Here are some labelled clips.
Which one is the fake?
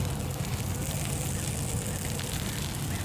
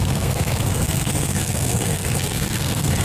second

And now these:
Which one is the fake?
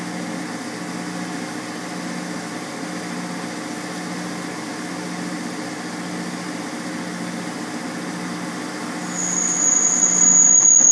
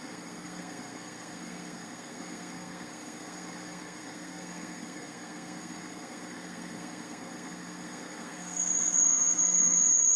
second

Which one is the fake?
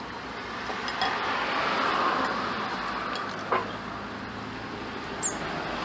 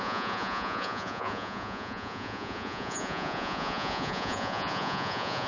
second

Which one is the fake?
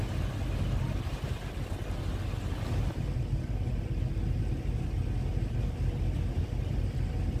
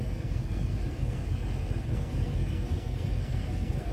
second